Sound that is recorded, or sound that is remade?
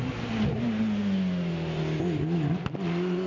recorded